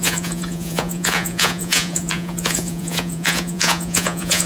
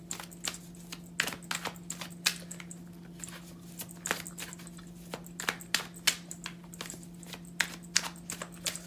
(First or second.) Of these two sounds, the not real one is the first